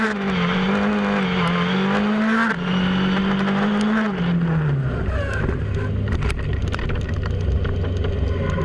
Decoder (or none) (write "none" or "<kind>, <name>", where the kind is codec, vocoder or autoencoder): none